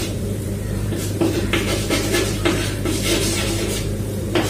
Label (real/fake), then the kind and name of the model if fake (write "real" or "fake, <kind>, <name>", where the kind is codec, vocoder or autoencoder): fake, vocoder, BigVGAN v2